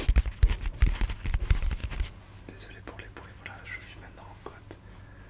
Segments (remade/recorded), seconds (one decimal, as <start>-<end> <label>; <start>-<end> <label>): 0.0-5.3 recorded